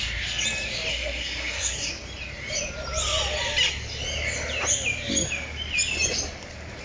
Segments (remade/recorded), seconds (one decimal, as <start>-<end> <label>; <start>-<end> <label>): 0.0-0.9 recorded; 0.9-1.9 remade; 1.9-6.8 recorded